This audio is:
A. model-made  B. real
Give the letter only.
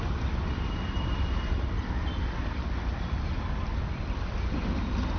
B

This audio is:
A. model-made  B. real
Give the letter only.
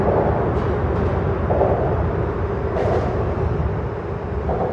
B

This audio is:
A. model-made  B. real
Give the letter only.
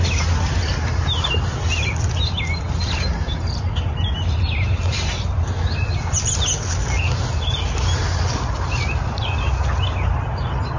B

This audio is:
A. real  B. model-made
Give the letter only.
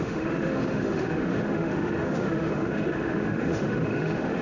B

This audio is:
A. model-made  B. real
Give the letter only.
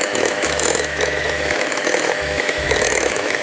A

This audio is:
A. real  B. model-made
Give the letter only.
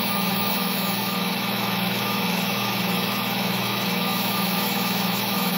B